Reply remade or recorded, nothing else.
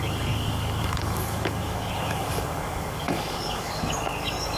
remade